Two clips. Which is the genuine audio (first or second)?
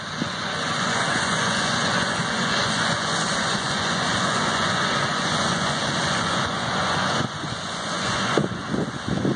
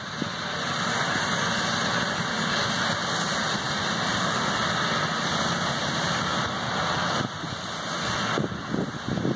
second